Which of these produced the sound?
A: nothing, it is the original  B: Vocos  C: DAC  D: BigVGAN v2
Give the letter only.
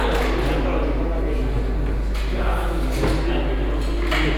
A